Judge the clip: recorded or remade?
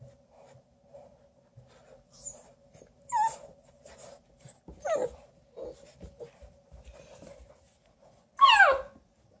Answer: recorded